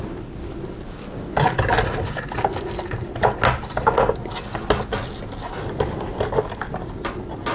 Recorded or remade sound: recorded